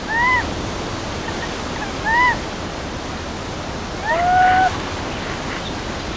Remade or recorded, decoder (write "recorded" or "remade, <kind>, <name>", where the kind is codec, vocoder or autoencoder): recorded